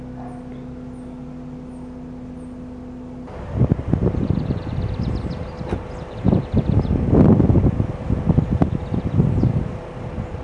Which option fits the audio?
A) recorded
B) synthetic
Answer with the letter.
A